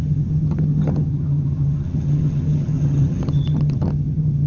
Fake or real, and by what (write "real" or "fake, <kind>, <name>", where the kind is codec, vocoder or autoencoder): fake, vocoder, HiFi-GAN